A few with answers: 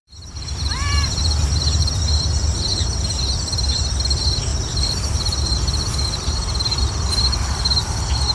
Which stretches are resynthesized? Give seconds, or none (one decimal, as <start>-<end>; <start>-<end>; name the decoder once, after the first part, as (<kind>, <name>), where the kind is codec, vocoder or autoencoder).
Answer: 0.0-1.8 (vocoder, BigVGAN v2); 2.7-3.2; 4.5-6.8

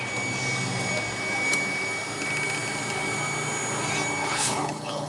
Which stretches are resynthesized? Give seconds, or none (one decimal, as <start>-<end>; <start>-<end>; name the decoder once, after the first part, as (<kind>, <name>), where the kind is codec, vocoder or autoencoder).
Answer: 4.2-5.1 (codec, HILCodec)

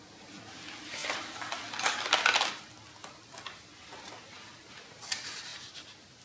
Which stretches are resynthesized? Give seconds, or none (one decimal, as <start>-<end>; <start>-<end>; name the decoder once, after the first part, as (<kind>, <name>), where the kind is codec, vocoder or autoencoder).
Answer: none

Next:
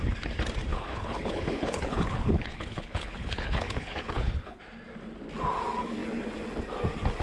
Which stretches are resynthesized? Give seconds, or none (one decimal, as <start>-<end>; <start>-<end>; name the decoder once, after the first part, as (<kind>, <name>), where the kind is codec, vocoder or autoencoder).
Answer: 0.7-4.6 (codec, HILCodec)